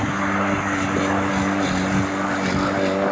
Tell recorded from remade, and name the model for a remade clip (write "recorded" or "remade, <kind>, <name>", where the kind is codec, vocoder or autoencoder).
recorded